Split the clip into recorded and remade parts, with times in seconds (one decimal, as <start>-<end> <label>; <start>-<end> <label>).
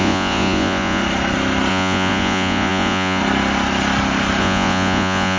0.0-1.0 remade; 1.0-1.7 recorded; 1.7-3.2 remade; 3.2-4.4 recorded; 4.4-5.4 remade